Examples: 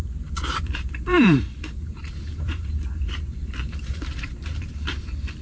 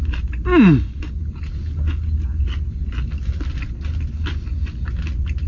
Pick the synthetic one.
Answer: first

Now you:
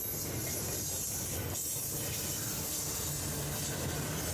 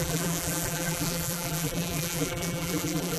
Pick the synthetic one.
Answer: second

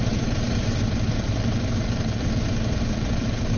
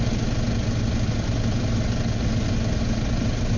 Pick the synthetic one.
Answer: first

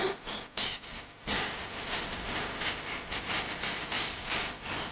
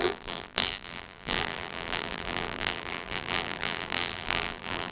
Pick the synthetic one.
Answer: second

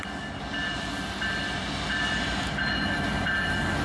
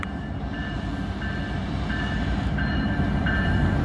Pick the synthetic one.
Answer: second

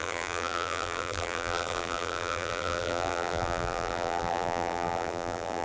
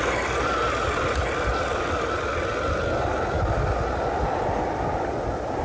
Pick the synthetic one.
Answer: first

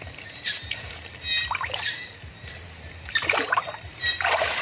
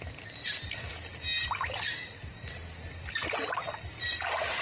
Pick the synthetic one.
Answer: first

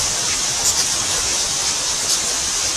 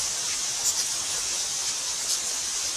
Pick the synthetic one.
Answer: first